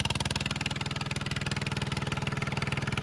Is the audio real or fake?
real